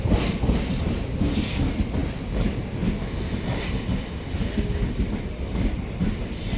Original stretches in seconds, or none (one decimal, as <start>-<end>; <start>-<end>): 0.0-6.6